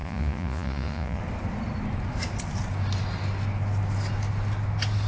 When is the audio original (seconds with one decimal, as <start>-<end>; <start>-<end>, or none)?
1.2-5.1